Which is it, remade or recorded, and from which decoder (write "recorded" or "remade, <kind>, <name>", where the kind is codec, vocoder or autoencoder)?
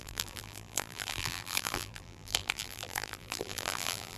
remade, vocoder, BigVGAN v2